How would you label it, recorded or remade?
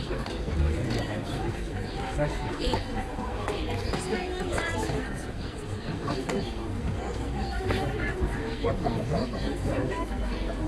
remade